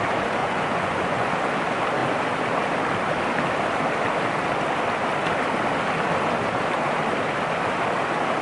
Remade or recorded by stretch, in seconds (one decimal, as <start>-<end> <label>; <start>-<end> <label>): 0.0-0.4 recorded; 0.4-1.3 remade; 1.3-8.4 recorded